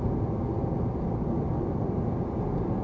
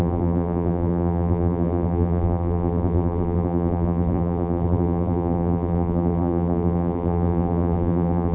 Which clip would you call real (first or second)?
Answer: first